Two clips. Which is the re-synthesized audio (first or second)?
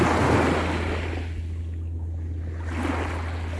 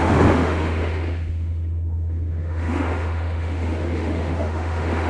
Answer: second